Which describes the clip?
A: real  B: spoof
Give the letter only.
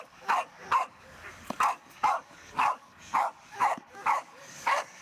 B